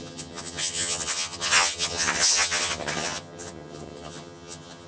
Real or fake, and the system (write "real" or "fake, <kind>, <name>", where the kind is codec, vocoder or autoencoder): fake, vocoder, HiFi-GAN